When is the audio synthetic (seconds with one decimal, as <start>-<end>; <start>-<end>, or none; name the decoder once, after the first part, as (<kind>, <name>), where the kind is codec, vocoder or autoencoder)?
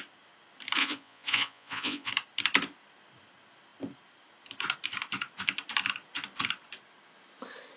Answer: 0.8-2.1 (vocoder, Vocos)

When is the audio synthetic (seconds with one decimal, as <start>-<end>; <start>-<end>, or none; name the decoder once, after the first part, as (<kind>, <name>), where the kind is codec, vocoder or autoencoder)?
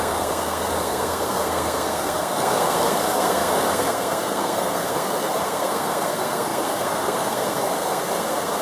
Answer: 0.0-8.6 (codec, SNAC)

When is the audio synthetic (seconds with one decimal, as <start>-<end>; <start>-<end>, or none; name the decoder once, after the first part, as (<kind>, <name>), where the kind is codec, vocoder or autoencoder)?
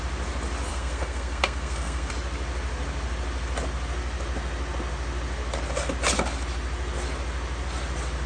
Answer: 0.7-2.1 (codec, SNAC)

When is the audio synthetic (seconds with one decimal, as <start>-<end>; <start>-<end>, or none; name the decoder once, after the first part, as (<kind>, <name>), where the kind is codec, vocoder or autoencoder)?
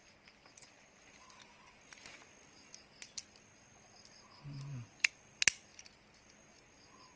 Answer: none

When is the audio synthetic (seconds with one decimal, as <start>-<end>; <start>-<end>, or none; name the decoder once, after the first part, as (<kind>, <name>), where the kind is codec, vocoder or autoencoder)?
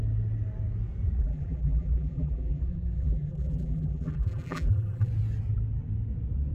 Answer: 1.2-5.1 (vocoder, BigVGAN v2)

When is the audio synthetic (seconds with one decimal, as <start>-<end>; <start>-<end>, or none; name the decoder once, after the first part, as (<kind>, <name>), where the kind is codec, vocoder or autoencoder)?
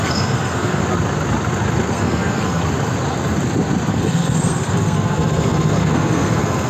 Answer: 0.0-0.8 (codec, SNAC); 1.9-2.6; 3.9-6.7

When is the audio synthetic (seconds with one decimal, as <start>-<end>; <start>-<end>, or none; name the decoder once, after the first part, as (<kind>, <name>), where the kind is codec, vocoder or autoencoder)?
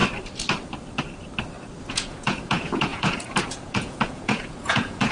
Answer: 1.9-5.1 (vocoder, Vocos)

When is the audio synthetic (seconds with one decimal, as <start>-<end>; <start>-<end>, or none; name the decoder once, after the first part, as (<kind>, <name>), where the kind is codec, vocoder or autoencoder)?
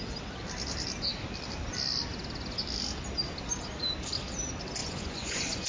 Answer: 4.8-5.7 (vocoder, Vocos)